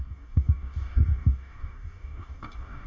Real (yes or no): no